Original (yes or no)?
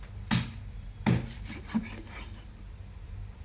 yes